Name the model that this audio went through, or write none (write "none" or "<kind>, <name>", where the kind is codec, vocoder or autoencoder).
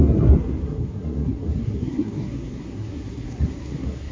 codec, SNAC